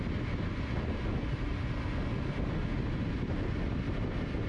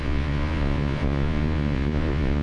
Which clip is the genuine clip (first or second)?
first